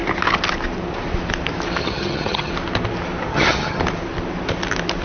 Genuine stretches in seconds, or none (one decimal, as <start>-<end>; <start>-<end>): 0.0-1.8; 2.5-3.3; 3.8-5.0